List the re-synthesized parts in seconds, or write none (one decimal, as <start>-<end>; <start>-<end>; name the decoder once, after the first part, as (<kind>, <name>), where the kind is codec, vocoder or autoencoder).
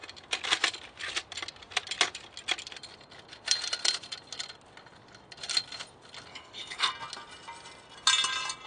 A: 6.3-6.9 (codec, HILCodec)